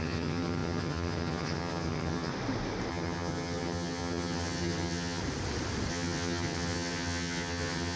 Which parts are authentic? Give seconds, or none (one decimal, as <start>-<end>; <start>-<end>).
2.3-2.9; 5.2-5.9